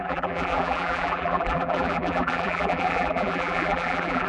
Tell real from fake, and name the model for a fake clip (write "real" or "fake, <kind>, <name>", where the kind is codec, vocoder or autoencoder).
fake, vocoder, BigVGAN v2